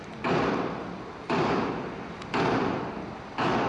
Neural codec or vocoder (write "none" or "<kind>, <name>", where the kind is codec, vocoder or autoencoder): vocoder, BigVGAN v2